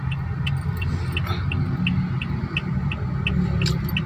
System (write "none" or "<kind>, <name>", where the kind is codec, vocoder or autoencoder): none